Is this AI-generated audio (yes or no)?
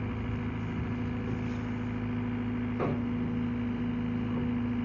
no